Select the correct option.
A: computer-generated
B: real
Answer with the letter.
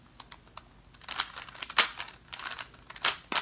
B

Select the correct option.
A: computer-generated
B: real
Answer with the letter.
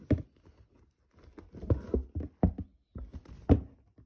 B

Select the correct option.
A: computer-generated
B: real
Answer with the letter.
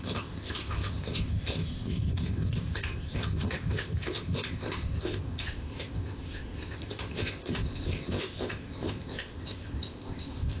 A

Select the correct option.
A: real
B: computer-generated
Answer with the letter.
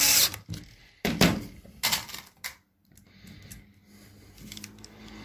A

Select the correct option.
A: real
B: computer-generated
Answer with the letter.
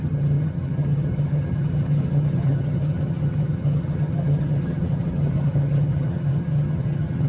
B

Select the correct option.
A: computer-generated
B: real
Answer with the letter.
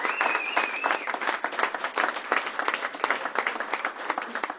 B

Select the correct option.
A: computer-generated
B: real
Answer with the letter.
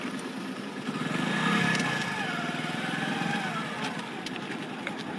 B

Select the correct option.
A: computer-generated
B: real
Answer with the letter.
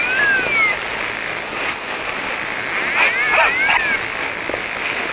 B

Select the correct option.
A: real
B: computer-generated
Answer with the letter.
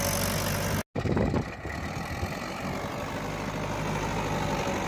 A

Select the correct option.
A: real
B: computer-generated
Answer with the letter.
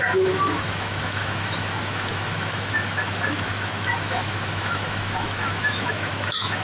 B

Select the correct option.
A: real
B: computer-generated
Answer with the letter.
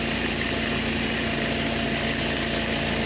A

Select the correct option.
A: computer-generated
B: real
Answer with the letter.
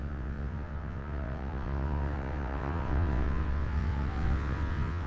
A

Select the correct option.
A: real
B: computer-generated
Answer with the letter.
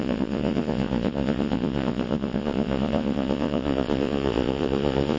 B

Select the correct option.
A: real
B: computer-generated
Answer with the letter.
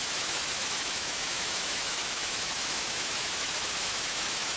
B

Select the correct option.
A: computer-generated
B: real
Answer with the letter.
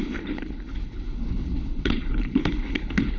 A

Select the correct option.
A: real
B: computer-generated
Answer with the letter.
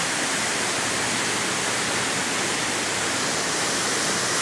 A